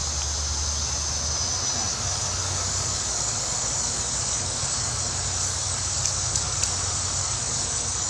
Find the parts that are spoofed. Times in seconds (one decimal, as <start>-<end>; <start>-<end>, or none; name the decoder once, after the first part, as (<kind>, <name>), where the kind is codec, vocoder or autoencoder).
1.9-6.6 (codec, DAC); 7.2-8.1